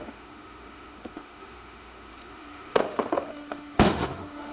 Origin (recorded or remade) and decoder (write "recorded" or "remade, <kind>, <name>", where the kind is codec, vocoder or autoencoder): remade, autoencoder, DAC-VAE